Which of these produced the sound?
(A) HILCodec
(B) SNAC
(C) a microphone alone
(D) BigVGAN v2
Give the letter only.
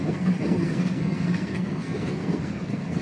B